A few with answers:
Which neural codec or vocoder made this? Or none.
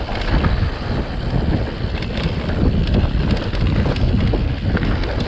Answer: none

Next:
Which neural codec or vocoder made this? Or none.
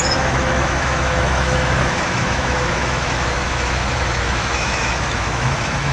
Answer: autoencoder, DAC-VAE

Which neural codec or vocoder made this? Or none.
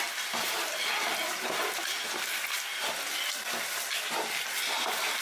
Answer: none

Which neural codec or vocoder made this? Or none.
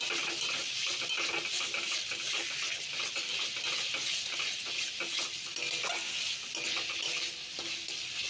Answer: none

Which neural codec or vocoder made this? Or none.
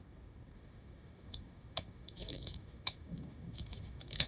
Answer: autoencoder, DAC-VAE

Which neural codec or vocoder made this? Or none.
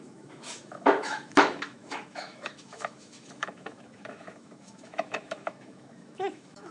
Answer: autoencoder, DAC-VAE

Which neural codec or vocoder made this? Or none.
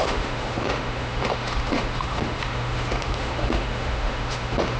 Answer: autoencoder, DAC-VAE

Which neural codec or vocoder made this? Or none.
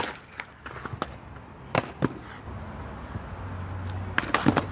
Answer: none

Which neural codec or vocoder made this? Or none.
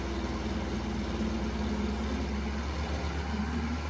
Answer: none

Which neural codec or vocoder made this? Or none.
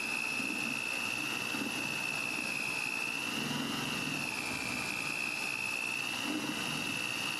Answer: none